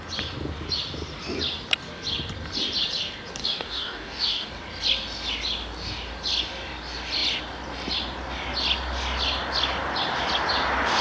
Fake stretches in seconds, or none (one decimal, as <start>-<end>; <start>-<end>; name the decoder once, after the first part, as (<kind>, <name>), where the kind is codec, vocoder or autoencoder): 3.4-4.5 (codec, DAC)